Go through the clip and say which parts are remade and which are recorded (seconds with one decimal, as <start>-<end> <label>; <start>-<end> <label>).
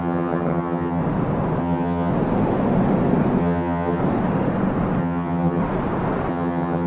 0.0-1.0 remade; 1.0-1.6 recorded; 1.6-2.1 remade; 2.1-3.4 recorded; 3.4-4.0 remade; 4.0-5.0 recorded; 5.0-5.6 remade; 5.6-6.3 recorded; 6.3-6.9 remade